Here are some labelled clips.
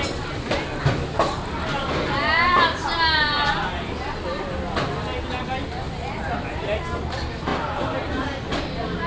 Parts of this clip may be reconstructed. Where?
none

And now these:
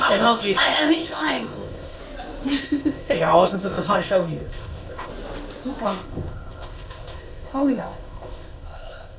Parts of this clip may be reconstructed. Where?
0.0-2.0; 2.6-5.1; 5.8-9.2